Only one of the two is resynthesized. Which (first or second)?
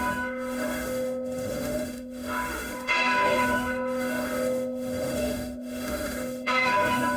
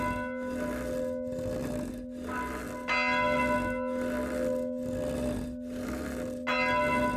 first